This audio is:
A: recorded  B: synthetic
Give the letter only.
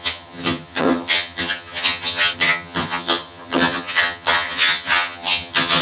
B